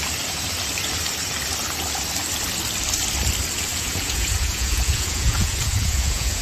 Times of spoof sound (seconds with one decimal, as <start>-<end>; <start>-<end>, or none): 3.7-6.4